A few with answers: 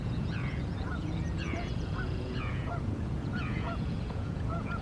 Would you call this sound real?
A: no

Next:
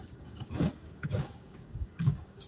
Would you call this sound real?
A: no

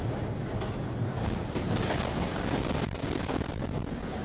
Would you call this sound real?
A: yes